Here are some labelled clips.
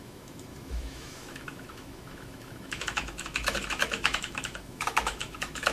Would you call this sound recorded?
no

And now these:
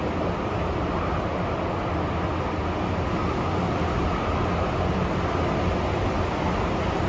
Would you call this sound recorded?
yes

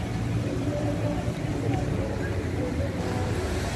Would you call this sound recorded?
no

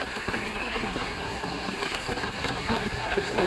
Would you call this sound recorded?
no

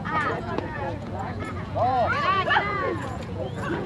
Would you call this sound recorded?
no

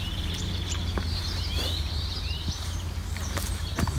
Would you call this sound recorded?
no